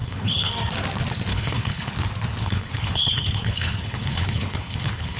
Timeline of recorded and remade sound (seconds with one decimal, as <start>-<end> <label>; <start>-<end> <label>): 0.0-0.5 remade; 0.5-1.3 recorded; 1.3-1.9 remade; 1.9-2.4 recorded; 2.4-5.2 remade